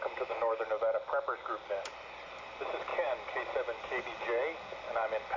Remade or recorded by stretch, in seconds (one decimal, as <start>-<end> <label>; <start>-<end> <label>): 0.0-2.9 recorded; 2.9-3.4 remade; 3.4-5.4 recorded